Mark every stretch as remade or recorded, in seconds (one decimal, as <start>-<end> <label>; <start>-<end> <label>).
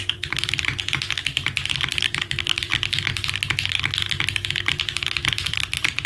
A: 0.0-0.7 remade; 0.7-2.0 recorded; 2.0-2.7 remade; 2.7-4.6 recorded; 4.6-6.1 remade